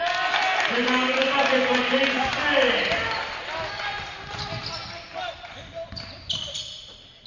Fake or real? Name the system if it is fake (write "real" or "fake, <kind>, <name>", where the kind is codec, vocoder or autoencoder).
real